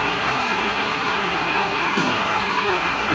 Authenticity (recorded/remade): remade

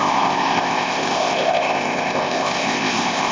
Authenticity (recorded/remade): remade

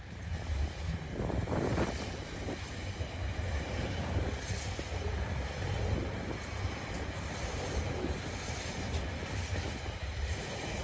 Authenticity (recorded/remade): recorded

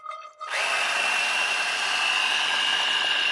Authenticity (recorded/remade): recorded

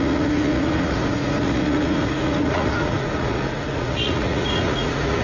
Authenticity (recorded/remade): remade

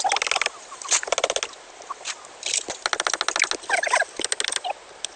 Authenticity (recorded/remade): recorded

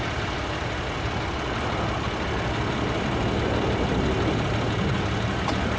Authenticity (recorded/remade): recorded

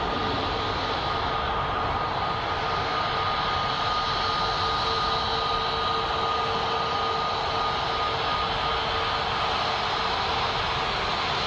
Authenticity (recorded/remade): recorded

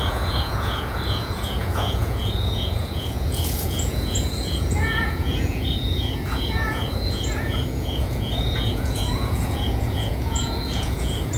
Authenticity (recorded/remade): remade